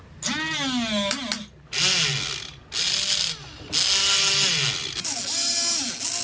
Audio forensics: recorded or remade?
recorded